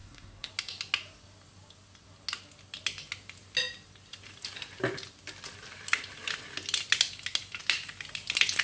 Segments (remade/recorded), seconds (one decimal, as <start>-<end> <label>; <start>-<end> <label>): 0.0-0.5 remade; 0.5-8.6 recorded